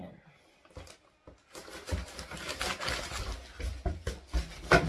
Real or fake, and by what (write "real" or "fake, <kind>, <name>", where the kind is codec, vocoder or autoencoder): real